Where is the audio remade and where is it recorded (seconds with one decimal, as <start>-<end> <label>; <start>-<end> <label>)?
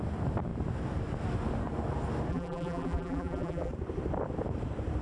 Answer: 0.0-2.3 recorded; 2.3-3.7 remade; 3.7-5.0 recorded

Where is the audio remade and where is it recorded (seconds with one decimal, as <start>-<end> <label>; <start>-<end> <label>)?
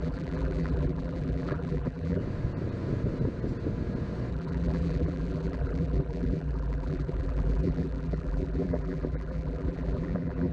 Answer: 0.0-2.2 remade; 2.2-4.3 recorded; 4.3-10.5 remade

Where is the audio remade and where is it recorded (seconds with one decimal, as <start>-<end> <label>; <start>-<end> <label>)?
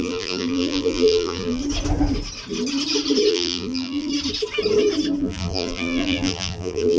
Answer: 0.0-1.6 remade; 1.6-3.3 recorded; 3.3-4.1 remade; 4.1-5.2 recorded; 5.2-7.0 remade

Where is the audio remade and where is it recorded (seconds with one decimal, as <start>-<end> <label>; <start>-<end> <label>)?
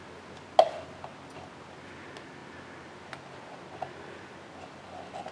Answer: 0.0-5.3 recorded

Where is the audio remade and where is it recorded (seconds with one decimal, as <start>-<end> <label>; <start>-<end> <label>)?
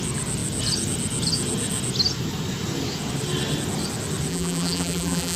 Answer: 0.0-4.3 recorded; 4.3-5.4 remade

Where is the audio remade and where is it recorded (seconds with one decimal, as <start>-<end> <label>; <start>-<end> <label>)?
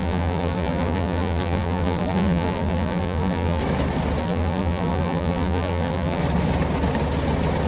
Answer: 0.0-3.6 remade; 3.6-4.2 recorded; 4.2-6.2 remade; 6.2-7.7 recorded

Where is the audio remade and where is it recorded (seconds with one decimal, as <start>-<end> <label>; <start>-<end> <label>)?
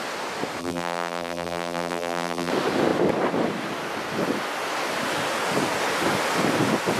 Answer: 0.0-0.6 recorded; 0.6-2.5 remade; 2.5-7.0 recorded